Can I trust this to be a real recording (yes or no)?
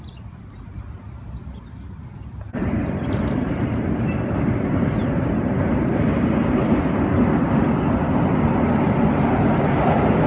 yes